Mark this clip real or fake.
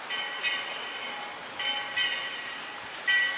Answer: real